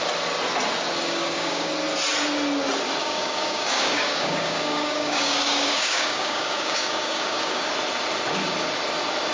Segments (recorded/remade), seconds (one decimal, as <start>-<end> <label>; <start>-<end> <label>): 0.0-1.0 recorded; 1.0-1.7 remade; 1.7-3.0 recorded; 3.0-7.7 remade; 7.7-9.3 recorded